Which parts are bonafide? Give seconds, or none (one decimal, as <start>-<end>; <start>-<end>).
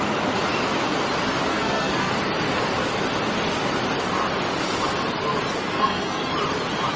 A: 0.0-1.5; 2.1-5.6; 6.3-7.0